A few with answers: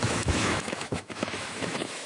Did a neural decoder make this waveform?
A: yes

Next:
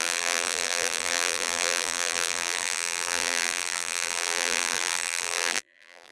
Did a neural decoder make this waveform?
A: yes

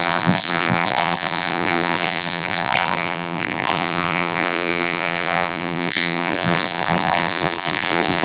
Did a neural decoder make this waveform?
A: yes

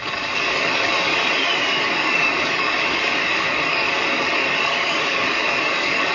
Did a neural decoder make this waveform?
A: yes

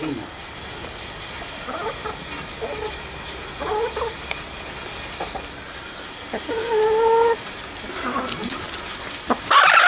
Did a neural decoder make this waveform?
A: no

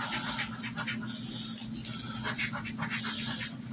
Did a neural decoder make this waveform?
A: no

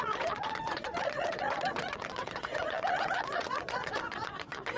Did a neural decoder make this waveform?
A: yes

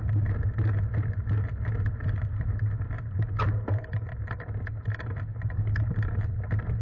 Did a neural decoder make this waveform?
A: no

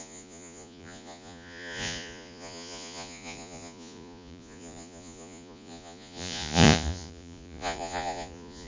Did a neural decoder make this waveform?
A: yes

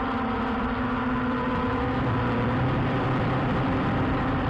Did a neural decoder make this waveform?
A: yes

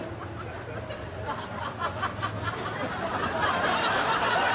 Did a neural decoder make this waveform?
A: no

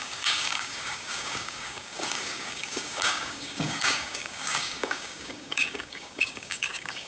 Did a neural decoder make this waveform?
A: yes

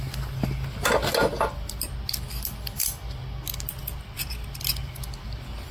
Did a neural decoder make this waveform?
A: no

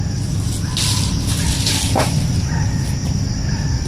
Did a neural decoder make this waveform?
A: no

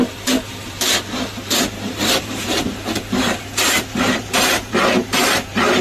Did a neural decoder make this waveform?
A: yes